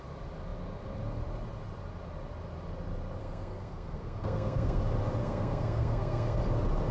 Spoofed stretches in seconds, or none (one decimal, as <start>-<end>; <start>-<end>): 3.2-4.8; 5.2-6.4